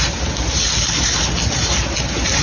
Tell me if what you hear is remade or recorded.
recorded